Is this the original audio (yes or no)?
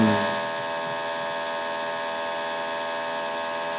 yes